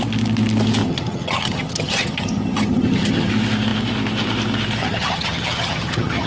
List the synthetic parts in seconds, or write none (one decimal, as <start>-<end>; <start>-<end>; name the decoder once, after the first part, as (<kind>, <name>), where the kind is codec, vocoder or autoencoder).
0.8-3.3 (vocoder, HiFi-GAN); 4.8-6.3